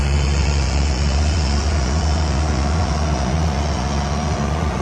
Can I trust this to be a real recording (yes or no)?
no